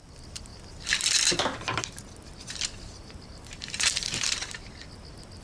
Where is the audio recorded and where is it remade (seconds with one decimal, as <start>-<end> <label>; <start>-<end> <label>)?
0.0-5.4 recorded